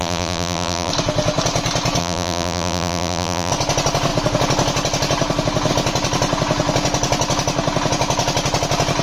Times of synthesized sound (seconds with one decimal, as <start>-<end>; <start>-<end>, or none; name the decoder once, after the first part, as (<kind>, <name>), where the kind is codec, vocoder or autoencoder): 0.0-0.9 (vocoder, BigVGAN v2); 2.0-3.5